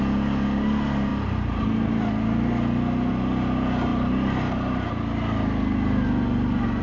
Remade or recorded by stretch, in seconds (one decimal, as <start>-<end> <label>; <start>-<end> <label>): 0.0-3.9 recorded; 3.9-4.9 remade; 4.9-6.8 recorded

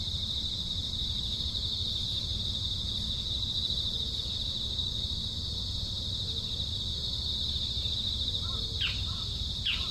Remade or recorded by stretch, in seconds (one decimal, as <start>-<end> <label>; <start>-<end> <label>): 0.0-9.9 recorded

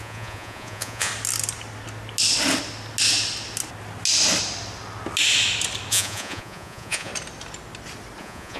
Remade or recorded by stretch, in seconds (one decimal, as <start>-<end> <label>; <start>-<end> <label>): 0.0-1.1 remade; 1.1-5.9 recorded; 5.9-7.1 remade; 7.1-8.2 recorded; 8.2-8.6 remade